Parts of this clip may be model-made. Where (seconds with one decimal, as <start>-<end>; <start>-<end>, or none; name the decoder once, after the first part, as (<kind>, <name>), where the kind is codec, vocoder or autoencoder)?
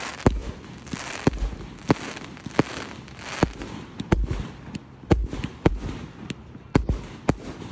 0.4-1.4 (vocoder, BigVGAN v2); 5.2-5.7